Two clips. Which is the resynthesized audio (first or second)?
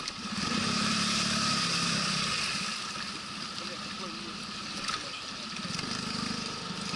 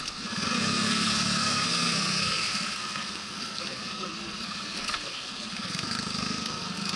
second